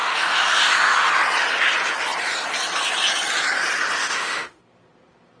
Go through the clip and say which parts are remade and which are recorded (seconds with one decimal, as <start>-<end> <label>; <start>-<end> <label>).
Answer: 0.0-1.1 remade; 1.1-4.0 recorded; 4.0-4.6 remade; 4.6-5.4 recorded